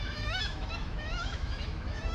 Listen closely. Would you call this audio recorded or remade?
remade